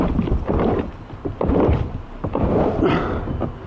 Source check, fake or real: real